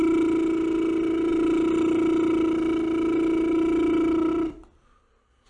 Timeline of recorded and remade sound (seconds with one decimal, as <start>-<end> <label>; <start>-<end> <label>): 0.0-5.5 recorded